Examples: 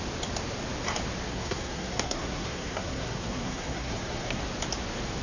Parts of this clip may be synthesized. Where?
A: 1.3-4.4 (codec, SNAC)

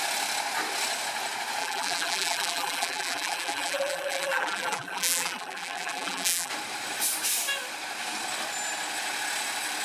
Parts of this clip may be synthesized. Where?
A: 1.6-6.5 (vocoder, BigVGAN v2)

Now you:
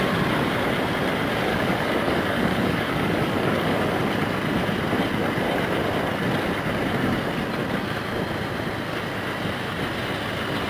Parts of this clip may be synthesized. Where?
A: 1.5-4.0 (codec, DAC)

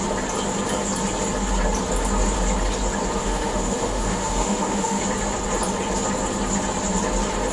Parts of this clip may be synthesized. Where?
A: 3.2-5.0 (autoencoder, DAC-VAE)

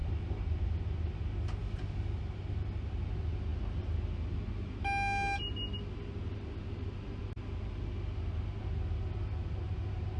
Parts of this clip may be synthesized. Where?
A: none

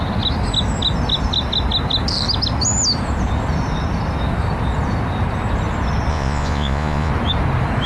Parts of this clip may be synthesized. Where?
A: 6.1-7.1 (vocoder, Vocos)